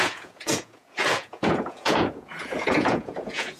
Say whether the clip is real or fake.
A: fake